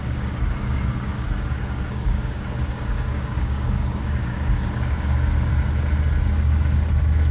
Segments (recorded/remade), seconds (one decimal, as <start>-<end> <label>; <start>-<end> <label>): 0.0-5.5 remade; 5.5-7.3 recorded